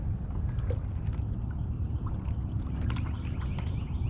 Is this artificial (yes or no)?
no